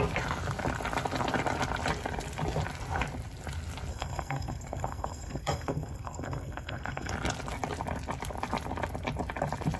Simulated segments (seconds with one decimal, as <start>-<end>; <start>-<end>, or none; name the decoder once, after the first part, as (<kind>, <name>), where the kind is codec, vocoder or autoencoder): 3.9-7.1 (codec, SNAC)